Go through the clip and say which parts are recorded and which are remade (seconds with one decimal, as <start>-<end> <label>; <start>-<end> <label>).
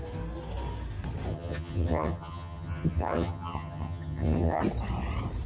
0.0-1.3 recorded; 1.3-4.6 remade; 4.6-5.5 recorded